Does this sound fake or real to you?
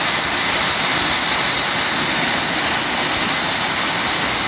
real